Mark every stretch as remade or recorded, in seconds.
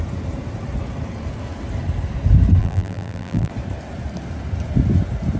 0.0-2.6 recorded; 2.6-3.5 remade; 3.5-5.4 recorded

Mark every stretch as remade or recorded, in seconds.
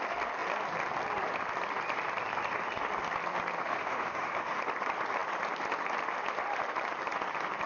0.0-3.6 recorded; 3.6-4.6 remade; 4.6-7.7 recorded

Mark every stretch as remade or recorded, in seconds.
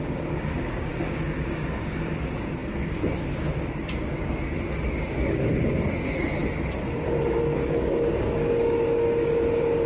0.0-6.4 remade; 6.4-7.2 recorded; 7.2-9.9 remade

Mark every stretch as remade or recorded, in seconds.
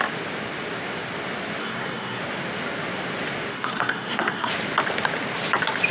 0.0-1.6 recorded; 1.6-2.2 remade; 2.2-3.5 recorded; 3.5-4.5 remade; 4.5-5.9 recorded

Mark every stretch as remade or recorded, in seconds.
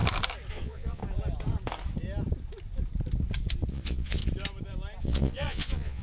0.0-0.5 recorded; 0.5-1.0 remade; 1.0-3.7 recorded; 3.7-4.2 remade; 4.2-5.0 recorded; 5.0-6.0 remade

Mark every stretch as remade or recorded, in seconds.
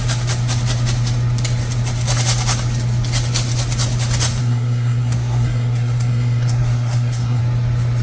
0.0-4.4 recorded; 4.4-7.4 remade; 7.4-8.0 recorded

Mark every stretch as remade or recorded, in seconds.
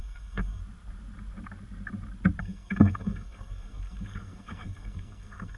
0.0-0.6 remade; 0.6-2.4 recorded; 2.4-5.6 remade